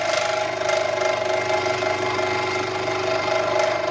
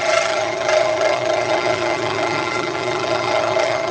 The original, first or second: first